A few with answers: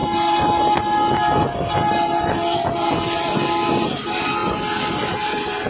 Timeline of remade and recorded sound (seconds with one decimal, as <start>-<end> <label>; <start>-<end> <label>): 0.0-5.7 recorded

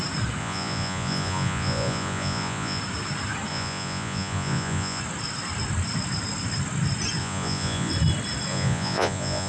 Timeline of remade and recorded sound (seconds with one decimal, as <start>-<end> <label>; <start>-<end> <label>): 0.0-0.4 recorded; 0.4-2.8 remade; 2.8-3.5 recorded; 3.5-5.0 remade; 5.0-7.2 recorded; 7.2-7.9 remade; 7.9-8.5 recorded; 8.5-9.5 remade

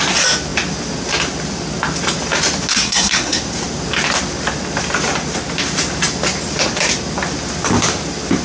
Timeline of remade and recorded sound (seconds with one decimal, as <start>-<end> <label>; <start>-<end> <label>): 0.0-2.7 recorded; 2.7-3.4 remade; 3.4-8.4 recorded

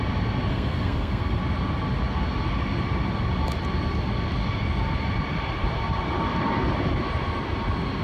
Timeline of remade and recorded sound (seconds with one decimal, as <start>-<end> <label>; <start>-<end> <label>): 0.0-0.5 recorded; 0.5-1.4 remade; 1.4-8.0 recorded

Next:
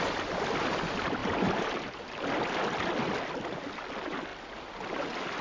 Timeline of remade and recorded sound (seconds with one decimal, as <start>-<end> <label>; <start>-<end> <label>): 0.0-1.2 recorded; 1.2-2.6 remade; 2.6-4.3 recorded; 4.3-4.9 remade; 4.9-5.4 recorded

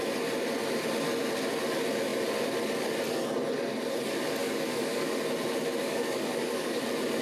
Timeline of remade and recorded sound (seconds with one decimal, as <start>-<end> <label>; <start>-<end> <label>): 0.0-4.4 recorded; 4.4-5.2 remade; 5.2-5.8 recorded; 5.8-6.8 remade; 6.8-7.2 recorded

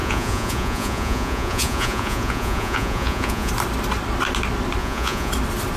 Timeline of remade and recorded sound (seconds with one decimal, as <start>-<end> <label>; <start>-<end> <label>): 0.0-3.5 remade; 3.5-4.8 recorded; 4.8-5.3 remade; 5.3-5.8 recorded